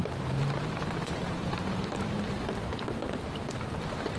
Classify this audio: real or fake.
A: fake